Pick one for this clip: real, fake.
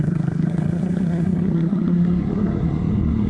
fake